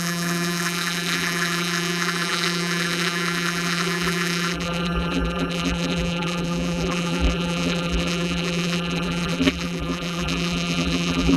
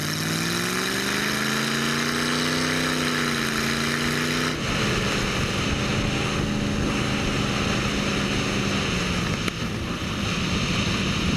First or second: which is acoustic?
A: second